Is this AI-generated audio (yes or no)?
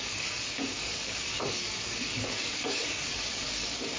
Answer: yes